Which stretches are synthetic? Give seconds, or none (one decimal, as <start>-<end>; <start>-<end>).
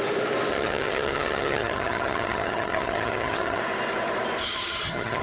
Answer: 0.5-3.6; 4.4-5.2